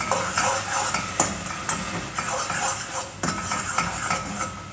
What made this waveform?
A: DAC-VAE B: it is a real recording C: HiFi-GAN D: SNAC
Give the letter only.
B